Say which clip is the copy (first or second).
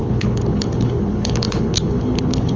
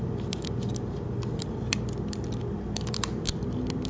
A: first